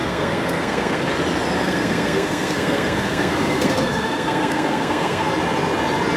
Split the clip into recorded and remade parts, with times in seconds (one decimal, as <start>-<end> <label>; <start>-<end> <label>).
0.0-1.1 remade; 1.1-1.6 recorded; 1.6-5.3 remade; 5.3-6.2 recorded